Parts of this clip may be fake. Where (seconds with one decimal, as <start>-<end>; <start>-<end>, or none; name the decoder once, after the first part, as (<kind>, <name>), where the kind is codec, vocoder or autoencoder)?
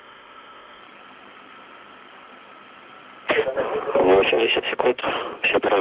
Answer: 0.0-0.8 (codec, ZipCodec); 4.3-5.0